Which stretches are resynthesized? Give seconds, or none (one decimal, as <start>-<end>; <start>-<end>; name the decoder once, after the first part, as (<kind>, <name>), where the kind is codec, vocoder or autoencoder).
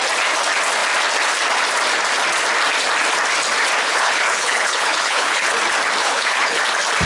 3.8-5.5 (codec, HILCodec); 6.0-6.6